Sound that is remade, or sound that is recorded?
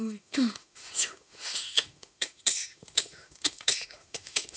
remade